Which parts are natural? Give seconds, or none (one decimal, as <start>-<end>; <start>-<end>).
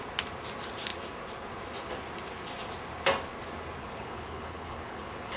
0.0-3.8